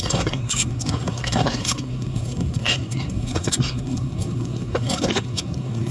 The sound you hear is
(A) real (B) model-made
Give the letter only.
B